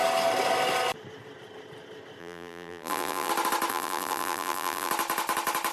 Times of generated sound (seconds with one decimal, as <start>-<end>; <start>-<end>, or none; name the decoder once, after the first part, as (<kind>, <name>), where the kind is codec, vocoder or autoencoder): 2.2-3.3 (vocoder, BigVGAN v2); 3.7-4.9